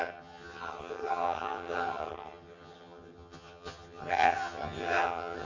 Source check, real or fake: fake